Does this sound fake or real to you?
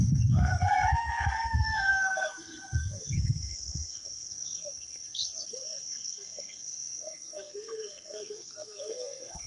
fake